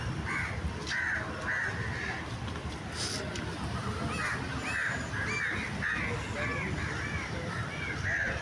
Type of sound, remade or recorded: recorded